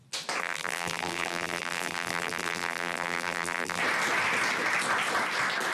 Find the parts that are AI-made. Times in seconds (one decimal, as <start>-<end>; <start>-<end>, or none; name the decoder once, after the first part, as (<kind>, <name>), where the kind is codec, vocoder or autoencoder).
0.4-3.8 (vocoder, BigVGAN v2)